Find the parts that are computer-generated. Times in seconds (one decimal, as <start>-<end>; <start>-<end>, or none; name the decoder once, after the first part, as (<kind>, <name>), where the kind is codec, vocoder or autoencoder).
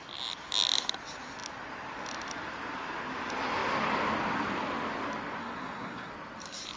5.4-6.1 (codec, SNAC)